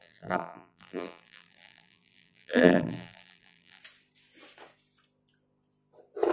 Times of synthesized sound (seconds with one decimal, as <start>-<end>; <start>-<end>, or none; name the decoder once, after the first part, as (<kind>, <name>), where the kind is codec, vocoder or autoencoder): 0.0-3.8 (vocoder, BigVGAN v2)